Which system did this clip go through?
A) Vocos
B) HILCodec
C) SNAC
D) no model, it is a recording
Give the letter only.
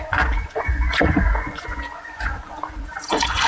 A